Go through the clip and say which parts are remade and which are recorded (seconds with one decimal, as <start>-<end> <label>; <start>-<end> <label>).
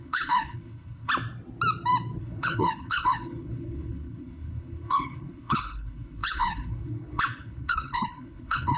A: 0.0-1.1 remade; 1.1-2.2 recorded; 2.2-8.8 remade